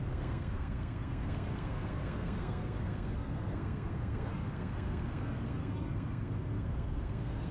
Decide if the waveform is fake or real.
fake